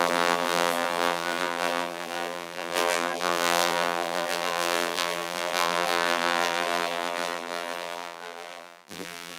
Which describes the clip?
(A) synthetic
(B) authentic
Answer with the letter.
A